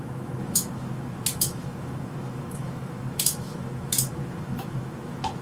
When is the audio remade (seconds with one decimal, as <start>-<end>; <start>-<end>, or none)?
0.0-5.4